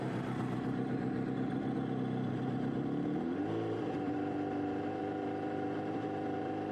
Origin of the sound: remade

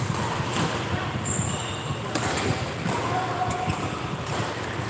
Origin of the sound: recorded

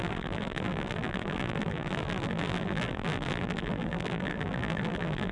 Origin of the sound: remade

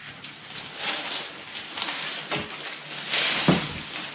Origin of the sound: recorded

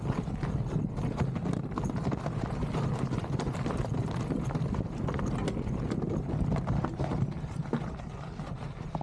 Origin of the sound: recorded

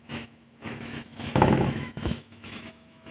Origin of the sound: remade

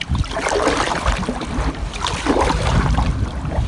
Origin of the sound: recorded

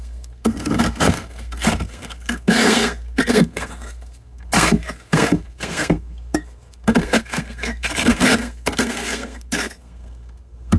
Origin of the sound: remade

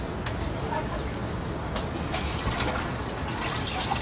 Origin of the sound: recorded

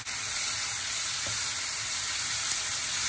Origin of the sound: remade